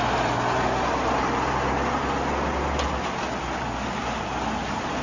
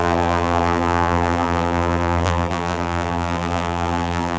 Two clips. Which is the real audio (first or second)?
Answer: first